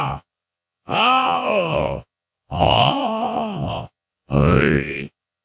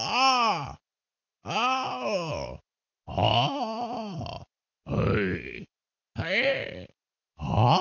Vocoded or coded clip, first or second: first